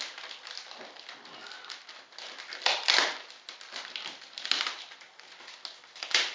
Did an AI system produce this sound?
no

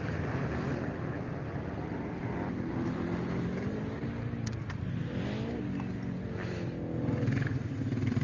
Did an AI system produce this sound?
no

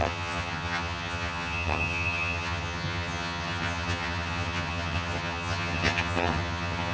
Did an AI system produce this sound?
yes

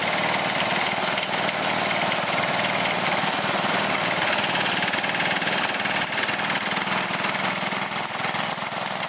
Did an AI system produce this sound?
no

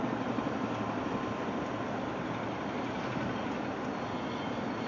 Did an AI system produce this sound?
no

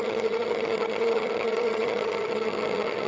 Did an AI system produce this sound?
yes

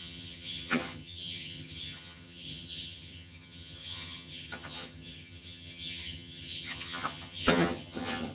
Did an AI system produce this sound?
yes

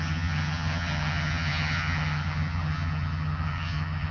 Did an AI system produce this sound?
yes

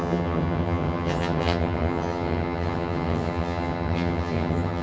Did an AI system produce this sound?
yes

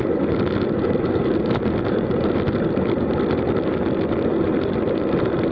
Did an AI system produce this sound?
no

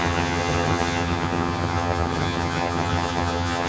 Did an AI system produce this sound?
yes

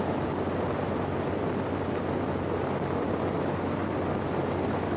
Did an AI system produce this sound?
no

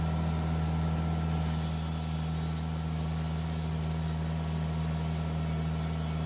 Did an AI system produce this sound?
no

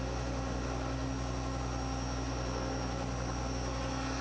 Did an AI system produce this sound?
no